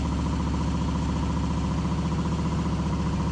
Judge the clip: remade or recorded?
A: recorded